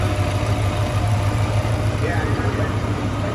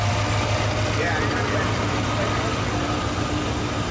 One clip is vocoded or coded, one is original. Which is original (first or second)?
second